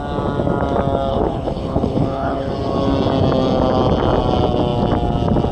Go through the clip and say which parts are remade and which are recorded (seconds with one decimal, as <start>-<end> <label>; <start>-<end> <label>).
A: 0.0-1.1 recorded; 1.1-2.5 remade; 2.5-5.5 recorded